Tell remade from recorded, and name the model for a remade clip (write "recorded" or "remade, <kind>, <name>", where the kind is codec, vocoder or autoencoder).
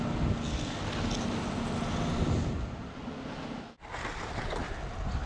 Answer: recorded